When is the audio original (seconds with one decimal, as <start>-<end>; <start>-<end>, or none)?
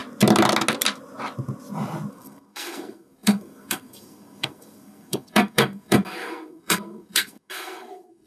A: 0.0-2.1